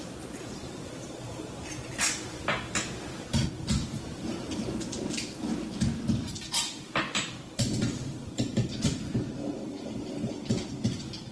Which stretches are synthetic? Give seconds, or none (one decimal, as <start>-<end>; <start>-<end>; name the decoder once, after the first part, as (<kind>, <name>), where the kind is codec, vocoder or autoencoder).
0.0-1.9 (vocoder, BigVGAN v2)